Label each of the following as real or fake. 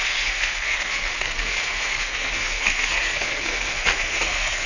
fake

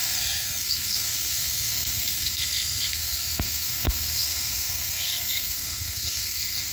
fake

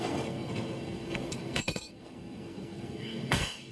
fake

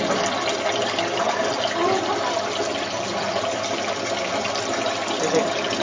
real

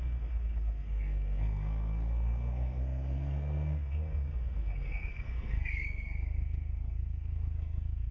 fake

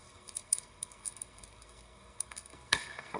fake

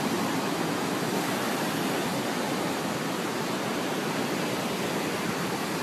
real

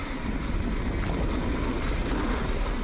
real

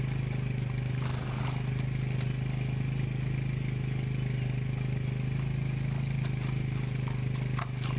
real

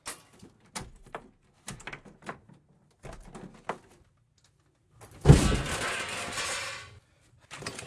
real